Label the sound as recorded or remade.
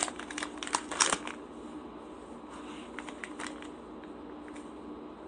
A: recorded